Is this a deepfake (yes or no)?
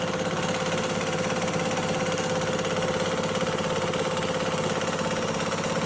no